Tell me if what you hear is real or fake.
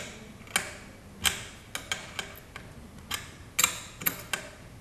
real